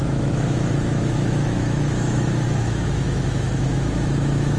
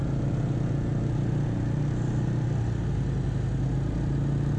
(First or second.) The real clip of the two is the second